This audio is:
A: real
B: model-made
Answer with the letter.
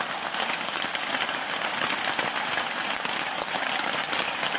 A